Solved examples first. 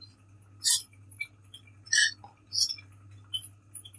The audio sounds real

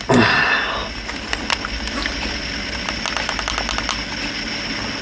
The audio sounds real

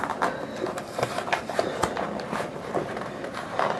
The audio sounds real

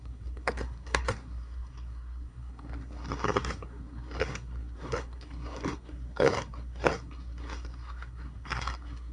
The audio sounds fake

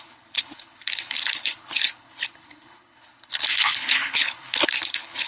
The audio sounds fake